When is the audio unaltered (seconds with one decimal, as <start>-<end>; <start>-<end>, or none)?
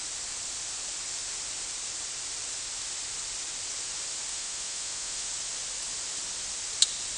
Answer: 0.0-4.3; 5.3-7.2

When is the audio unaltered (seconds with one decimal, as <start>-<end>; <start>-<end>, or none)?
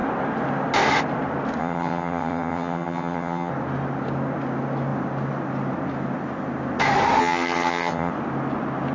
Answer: 0.0-1.6; 3.5-7.2; 8.1-8.9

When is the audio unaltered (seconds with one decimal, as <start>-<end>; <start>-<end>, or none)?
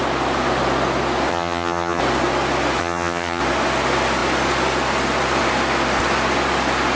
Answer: 0.0-1.3; 2.0-2.8; 3.4-7.0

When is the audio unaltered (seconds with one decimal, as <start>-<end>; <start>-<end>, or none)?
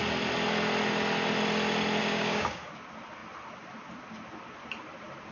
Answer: 0.0-2.0; 2.7-5.3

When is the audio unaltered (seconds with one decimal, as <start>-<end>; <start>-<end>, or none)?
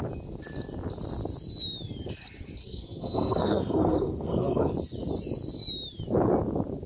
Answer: 0.0-2.6; 4.7-6.9